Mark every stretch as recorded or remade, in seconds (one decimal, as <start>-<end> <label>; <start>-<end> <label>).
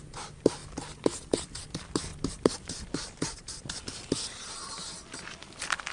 0.0-0.6 remade; 0.6-1.4 recorded; 1.4-2.1 remade; 2.1-5.9 recorded